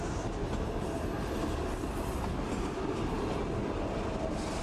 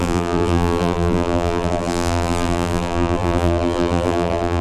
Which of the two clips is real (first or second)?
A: first